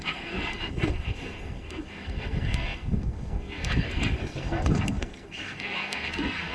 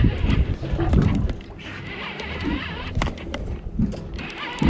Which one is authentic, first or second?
second